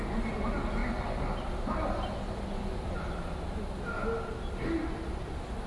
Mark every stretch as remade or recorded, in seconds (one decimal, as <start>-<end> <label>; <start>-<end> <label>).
0.0-5.7 recorded

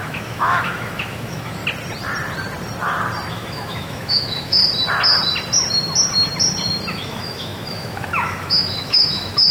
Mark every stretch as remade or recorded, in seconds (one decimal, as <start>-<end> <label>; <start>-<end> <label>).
0.0-1.6 remade; 1.6-3.3 recorded; 3.3-4.6 remade; 4.6-6.9 recorded; 6.9-9.5 remade

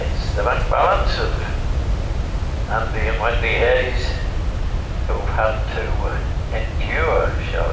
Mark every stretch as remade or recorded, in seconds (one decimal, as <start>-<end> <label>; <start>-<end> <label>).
0.0-7.7 recorded

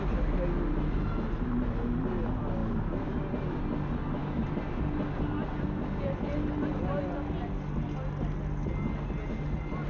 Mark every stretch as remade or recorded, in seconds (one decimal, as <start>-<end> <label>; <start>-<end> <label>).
0.0-2.6 recorded; 2.6-3.6 remade; 3.6-9.9 recorded

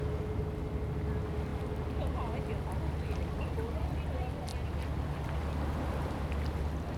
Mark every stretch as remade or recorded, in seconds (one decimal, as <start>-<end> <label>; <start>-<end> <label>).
0.0-7.0 recorded

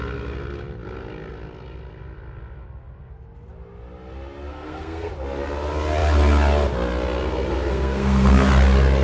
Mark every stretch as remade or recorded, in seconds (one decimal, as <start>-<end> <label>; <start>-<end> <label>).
0.0-4.5 recorded; 4.5-5.1 remade; 5.1-7.7 recorded; 7.7-8.5 remade; 8.5-9.0 recorded

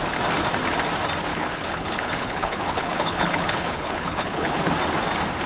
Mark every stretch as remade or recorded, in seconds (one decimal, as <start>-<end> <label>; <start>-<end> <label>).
0.0-1.3 recorded; 1.3-4.6 remade; 4.6-5.5 recorded